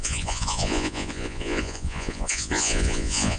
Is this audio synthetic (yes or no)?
yes